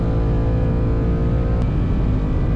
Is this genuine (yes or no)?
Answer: yes